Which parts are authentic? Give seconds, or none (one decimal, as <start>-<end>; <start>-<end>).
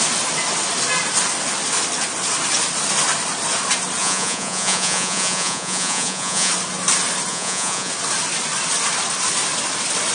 0.0-4.0; 6.5-7.3; 7.9-10.1